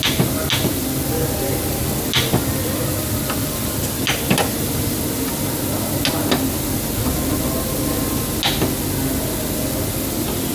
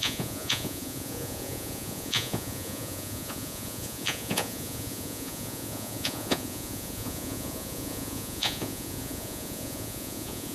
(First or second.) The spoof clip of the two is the second